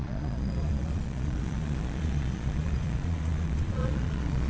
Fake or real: fake